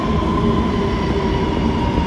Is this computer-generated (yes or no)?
no